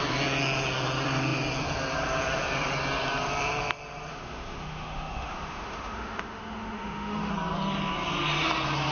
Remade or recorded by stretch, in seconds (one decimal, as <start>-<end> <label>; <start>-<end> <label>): 0.0-4.1 recorded; 4.1-7.3 remade; 7.3-8.9 recorded